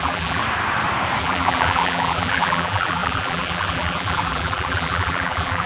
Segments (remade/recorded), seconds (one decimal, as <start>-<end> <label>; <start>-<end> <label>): 0.0-0.4 remade; 0.4-1.2 recorded; 1.2-5.7 remade